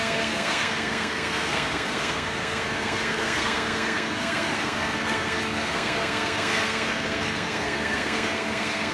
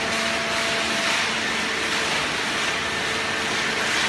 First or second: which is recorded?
second